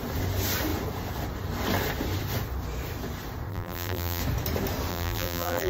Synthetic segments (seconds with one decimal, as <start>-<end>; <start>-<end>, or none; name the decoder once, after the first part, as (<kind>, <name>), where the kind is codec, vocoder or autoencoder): 3.5-4.2 (vocoder, BigVGAN v2); 4.9-5.7